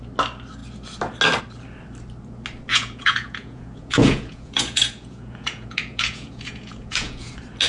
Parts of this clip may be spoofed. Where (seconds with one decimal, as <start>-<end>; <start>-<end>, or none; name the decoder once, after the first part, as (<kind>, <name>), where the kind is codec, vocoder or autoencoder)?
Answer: 2.7-7.3 (vocoder, Vocos)

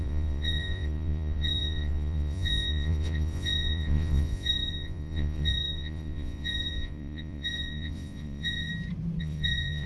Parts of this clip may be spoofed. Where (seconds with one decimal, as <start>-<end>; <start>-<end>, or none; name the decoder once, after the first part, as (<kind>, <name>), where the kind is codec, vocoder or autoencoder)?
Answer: 0.0-8.7 (vocoder, Vocos); 9.2-9.9

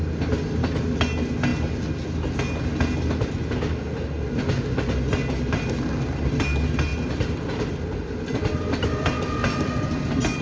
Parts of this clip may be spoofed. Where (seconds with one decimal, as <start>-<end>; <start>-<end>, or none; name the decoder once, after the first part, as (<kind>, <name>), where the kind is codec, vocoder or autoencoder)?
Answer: none

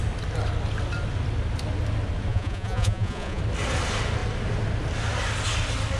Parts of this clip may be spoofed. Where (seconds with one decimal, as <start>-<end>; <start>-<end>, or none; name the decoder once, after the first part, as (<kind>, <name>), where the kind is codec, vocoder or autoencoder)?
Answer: 2.3-3.4 (vocoder, Vocos)

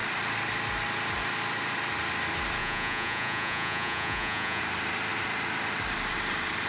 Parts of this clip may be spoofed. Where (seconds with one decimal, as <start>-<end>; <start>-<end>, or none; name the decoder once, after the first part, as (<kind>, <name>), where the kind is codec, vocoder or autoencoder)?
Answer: 2.6-4.6 (vocoder, Vocos)

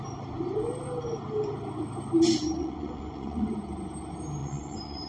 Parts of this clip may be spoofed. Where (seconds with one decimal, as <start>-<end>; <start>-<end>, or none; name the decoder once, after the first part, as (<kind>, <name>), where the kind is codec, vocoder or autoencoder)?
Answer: 2.6-3.5 (vocoder, Vocos); 4.4-5.1

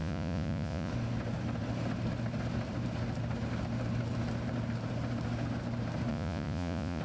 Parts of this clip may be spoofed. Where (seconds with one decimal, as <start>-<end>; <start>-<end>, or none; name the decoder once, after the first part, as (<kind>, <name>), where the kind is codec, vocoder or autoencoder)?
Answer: 0.0-0.9 (vocoder, Vocos); 6.1-7.0

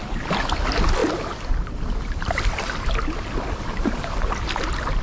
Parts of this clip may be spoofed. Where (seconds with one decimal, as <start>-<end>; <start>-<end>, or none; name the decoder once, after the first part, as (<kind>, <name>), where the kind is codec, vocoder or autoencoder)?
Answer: none